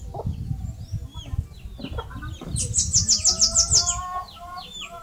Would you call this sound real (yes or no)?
yes